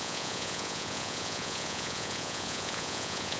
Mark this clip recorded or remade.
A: remade